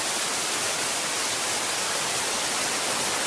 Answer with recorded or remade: recorded